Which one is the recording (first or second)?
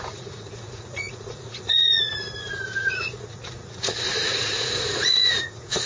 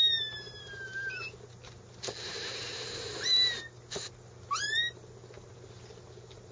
second